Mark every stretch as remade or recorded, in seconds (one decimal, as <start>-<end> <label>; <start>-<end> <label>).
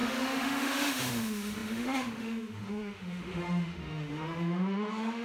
0.0-5.2 remade